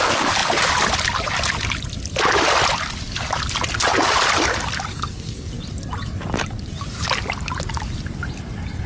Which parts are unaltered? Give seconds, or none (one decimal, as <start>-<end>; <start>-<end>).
0.0-4.9; 5.5-8.9